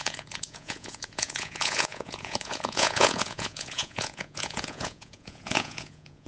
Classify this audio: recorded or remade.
remade